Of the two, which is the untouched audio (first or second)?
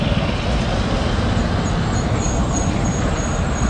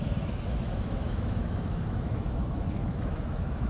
first